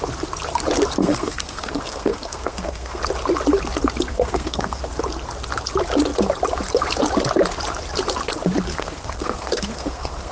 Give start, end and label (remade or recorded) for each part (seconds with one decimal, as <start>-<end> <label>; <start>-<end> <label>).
0.0-1.0 recorded; 1.0-3.0 remade; 3.0-4.1 recorded; 4.1-4.8 remade; 4.8-8.7 recorded; 8.7-10.3 remade